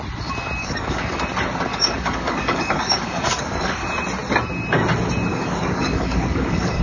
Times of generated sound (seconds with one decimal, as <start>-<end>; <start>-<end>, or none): 0.6-1.2; 1.7-3.8; 5.3-6.8